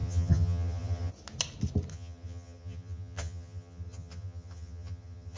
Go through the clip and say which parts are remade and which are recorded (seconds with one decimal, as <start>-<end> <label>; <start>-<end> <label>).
0.0-1.1 remade; 1.1-1.9 recorded; 1.9-5.4 remade